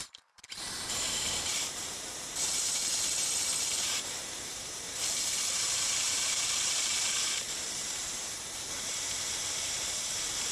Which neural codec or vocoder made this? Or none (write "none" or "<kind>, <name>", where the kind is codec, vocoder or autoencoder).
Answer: vocoder, BigVGAN v2